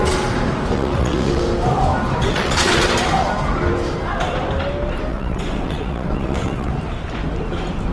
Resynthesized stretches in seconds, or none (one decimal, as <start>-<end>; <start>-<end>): 0.7-1.4; 2.2-2.9; 5.1-6.7

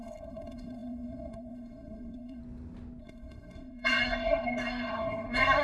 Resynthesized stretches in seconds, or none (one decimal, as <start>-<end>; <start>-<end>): 0.0-2.4; 3.0-5.6

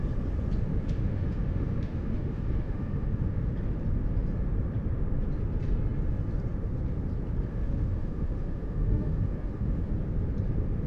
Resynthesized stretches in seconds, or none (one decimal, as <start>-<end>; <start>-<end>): 0.7-3.5; 7.5-9.9

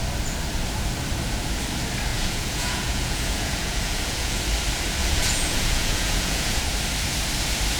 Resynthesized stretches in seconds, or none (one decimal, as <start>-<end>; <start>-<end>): 2.1-4.4; 5.0-6.6

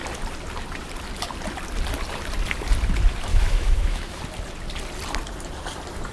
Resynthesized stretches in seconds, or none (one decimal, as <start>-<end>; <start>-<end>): 3.3-4.2

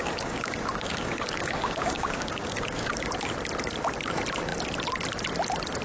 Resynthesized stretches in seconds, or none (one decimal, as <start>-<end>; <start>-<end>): 0.0-2.9

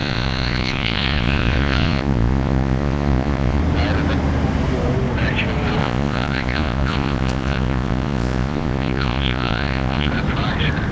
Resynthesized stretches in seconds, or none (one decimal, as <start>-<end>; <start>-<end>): 0.0-3.6; 5.8-10.1